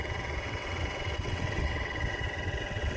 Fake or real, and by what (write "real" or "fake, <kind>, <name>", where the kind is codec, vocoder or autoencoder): fake, vocoder, WaveNeXt